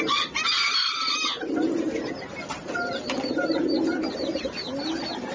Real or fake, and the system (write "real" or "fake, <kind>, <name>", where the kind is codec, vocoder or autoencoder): real